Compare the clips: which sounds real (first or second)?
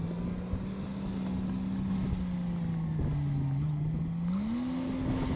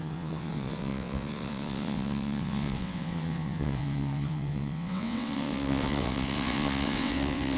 first